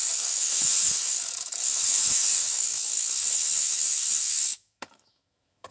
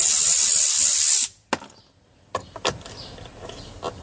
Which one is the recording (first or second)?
second